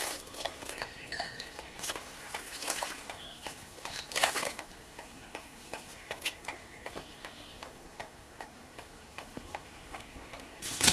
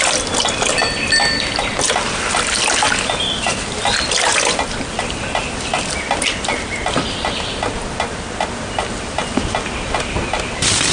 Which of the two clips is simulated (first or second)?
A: first